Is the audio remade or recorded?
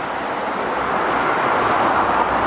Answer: recorded